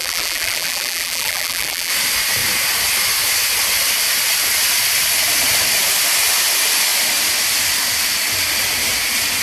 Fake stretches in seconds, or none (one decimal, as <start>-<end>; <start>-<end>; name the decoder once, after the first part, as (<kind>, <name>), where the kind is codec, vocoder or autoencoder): 0.0-1.9 (vocoder, BigVGAN v2)